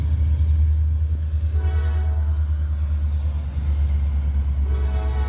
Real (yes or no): yes